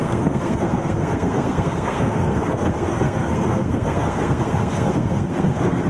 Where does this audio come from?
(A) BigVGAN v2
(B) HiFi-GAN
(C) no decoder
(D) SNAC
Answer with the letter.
D